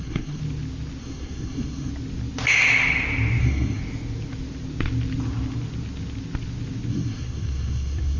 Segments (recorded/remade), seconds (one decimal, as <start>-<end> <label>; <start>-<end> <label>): 0.0-0.4 remade; 0.4-1.0 recorded; 1.0-1.9 remade; 1.9-3.4 recorded; 3.4-3.8 remade; 3.8-6.9 recorded; 6.9-8.2 remade